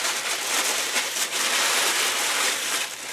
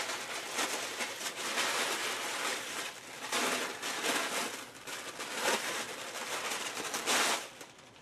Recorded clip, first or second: second